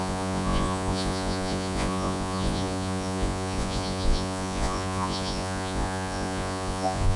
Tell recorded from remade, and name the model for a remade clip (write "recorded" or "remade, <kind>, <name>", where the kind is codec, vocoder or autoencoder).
remade, vocoder, Vocos